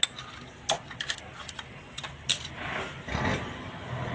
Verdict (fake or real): real